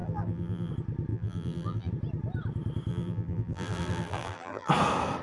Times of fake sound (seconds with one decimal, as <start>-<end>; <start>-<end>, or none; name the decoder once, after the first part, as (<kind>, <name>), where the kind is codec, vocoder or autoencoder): 0.0-0.7 (vocoder, BigVGAN v2); 1.1-1.9; 2.9-4.7